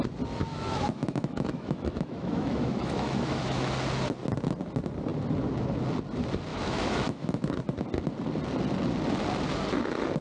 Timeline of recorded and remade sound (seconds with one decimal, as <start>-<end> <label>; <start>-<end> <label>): 0.0-0.5 recorded; 0.5-3.7 remade; 3.7-6.5 recorded; 6.5-7.6 remade; 7.6-10.2 recorded